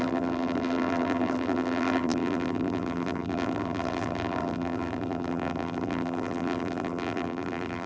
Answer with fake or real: fake